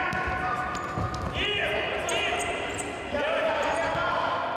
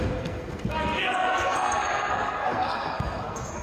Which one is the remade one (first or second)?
second